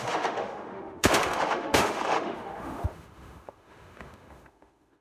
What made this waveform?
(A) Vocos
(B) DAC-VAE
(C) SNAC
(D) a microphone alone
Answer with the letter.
B